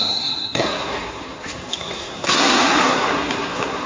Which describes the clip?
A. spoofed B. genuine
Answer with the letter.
A